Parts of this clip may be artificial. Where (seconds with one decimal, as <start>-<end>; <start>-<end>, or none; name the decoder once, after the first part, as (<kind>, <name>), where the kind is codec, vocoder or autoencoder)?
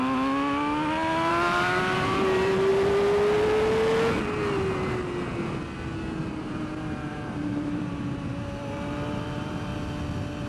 1.3-2.7 (vocoder, BigVGAN v2); 6.3-9.7